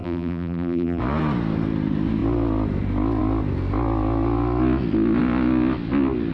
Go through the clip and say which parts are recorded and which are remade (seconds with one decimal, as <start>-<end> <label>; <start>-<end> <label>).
0.0-1.0 remade; 1.0-6.3 recorded